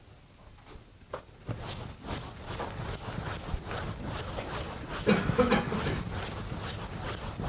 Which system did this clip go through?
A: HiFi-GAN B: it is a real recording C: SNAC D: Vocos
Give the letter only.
B